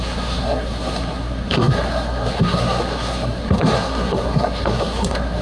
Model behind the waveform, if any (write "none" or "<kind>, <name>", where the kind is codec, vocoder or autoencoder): codec, SNAC